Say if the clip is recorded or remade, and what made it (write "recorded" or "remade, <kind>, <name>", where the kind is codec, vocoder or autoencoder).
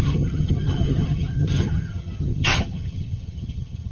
remade, vocoder, HiFi-GAN